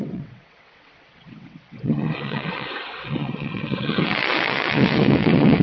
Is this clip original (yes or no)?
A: no